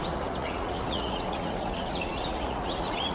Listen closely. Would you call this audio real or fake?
fake